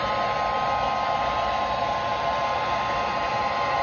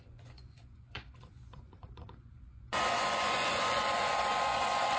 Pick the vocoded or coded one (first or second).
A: second